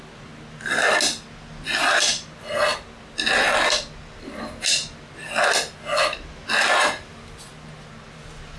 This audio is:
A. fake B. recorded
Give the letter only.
B